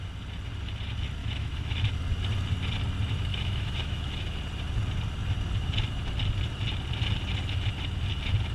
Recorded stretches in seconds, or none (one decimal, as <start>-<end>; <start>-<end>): 0.0-1.2; 1.9-3.3; 4.1-8.5